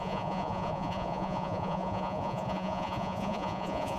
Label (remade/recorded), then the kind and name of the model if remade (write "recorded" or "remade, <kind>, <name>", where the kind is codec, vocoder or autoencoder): remade, vocoder, Vocos